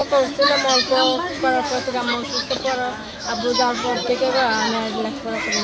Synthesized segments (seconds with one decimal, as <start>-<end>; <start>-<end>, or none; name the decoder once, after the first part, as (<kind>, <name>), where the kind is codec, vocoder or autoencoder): 0.0-3.9 (autoencoder, DAC-VAE)